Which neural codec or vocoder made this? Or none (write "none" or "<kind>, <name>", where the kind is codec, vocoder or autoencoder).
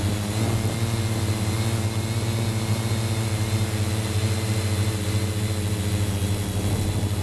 none